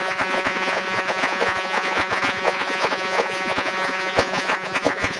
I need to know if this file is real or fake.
fake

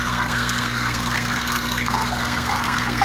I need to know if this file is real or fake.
fake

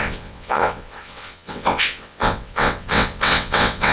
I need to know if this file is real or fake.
fake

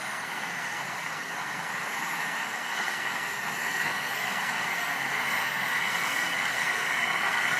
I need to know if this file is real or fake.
fake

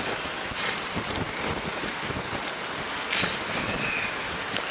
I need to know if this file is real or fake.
real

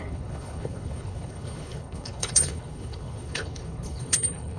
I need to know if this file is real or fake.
fake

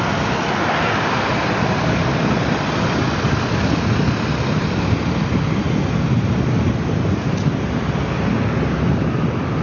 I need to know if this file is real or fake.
real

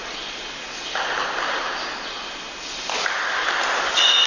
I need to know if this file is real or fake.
real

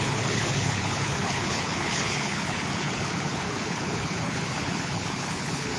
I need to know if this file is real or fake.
fake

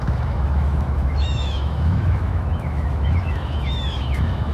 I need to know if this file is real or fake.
fake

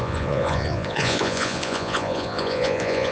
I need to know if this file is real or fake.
fake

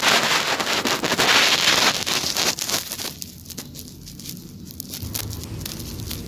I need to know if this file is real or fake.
real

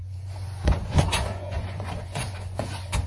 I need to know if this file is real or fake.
fake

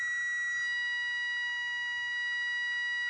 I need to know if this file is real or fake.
real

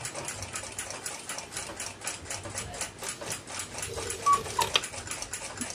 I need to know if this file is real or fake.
real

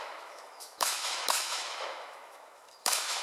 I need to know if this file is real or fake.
fake